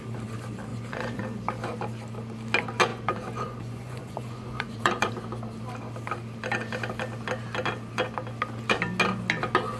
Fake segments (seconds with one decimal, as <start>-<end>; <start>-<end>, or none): 0.7-1.2; 2.9-5.1